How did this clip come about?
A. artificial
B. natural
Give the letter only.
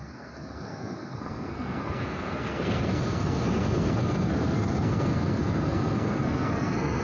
A